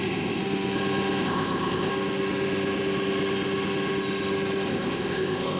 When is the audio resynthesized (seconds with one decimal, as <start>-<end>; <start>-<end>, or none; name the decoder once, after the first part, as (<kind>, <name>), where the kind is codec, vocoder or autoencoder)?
0.0-0.4 (codec, ZipCodec); 1.2-1.9; 4.7-5.6